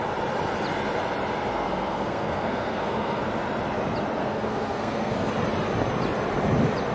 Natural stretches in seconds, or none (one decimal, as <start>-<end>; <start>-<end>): 0.0-1.5; 3.2-4.2; 5.3-6.9